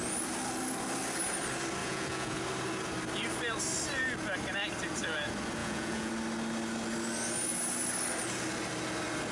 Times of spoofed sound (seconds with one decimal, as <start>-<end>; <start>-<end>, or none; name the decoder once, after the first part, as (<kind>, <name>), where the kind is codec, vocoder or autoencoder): 1.8-2.4 (vocoder, Vocos); 5.6-6.1